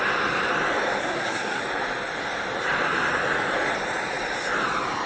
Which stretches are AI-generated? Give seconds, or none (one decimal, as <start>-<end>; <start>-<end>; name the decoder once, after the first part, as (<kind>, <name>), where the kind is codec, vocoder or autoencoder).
1.0-1.6 (codec, SNAC)